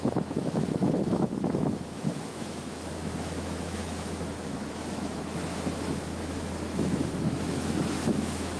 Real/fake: fake